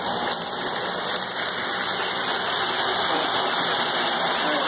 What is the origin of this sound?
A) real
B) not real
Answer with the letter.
B